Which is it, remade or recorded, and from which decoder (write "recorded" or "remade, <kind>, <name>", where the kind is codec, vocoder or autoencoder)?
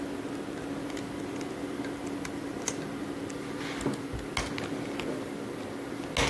recorded